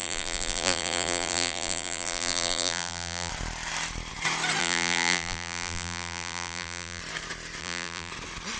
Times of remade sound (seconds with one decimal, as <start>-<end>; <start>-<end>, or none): 0.0-3.3; 4.6-7.0; 7.6-8.1